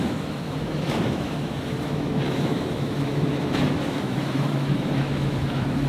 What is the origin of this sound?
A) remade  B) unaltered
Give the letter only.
A